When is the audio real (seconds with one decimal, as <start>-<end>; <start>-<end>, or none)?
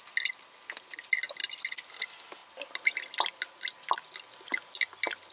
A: 0.0-5.3